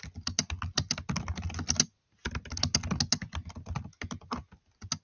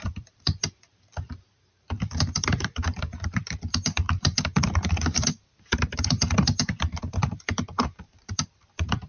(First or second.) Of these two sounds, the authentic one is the first